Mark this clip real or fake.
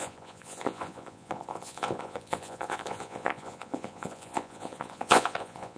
fake